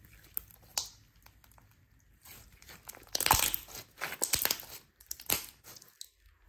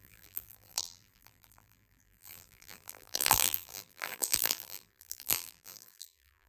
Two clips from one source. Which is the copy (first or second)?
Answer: second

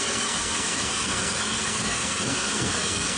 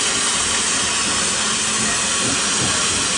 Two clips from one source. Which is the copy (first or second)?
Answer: first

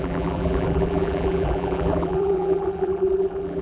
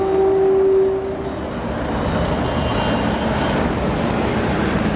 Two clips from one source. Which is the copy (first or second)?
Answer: first